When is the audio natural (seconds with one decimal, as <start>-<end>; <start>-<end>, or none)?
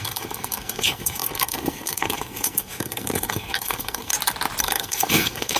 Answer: 4.1-4.6